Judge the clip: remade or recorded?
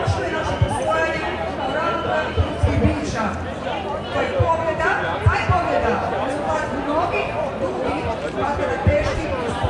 recorded